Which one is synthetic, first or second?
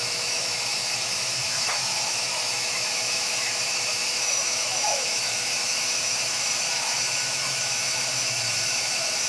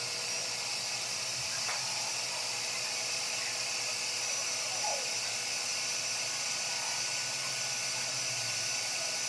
first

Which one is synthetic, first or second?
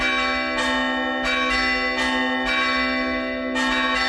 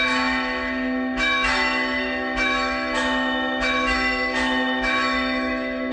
second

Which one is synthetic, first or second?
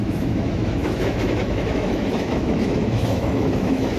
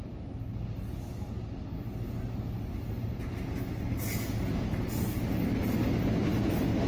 first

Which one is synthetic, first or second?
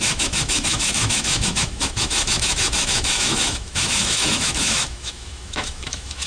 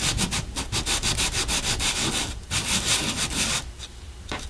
first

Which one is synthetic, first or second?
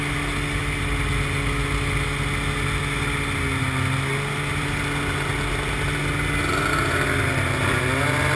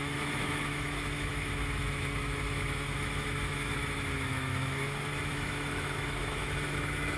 second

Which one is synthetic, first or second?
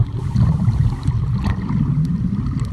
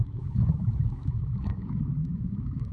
second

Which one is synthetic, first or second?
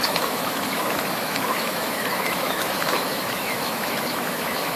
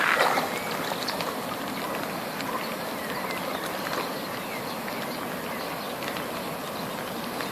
first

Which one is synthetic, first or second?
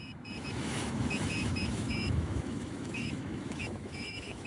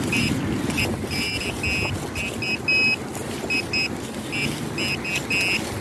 first